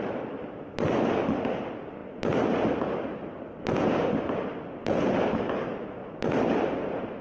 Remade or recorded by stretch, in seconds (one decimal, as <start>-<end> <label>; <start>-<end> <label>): 0.0-7.2 recorded